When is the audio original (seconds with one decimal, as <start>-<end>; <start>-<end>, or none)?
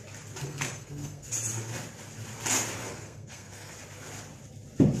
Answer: 0.0-0.4; 1.3-2.8; 3.7-5.0